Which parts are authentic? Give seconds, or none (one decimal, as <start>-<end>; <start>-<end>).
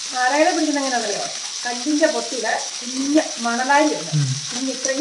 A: 0.0-1.0; 1.6-2.5; 3.2-5.0